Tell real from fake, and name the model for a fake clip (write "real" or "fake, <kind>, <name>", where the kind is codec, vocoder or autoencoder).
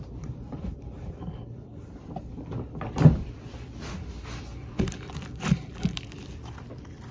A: fake, vocoder, BigVGAN v2